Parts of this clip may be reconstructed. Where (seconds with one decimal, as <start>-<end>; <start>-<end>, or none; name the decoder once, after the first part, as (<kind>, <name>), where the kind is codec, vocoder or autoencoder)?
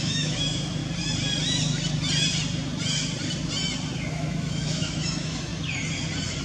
0.0-0.8 (autoencoder, DAC-VAE); 4.1-5.5